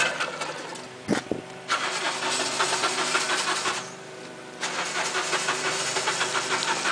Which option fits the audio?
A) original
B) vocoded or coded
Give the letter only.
A